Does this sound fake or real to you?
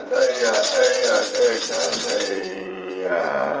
fake